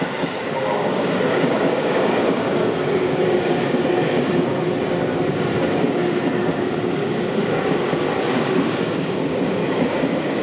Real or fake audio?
fake